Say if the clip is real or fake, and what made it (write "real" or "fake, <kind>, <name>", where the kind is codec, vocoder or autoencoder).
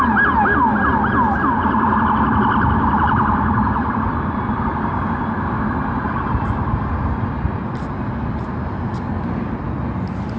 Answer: real